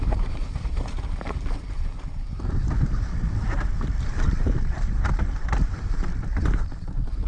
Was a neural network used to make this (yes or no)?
yes